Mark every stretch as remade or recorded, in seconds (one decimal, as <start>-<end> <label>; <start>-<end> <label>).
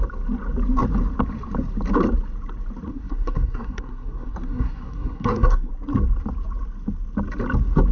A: 0.0-2.9 recorded; 2.9-5.7 remade; 5.7-7.9 recorded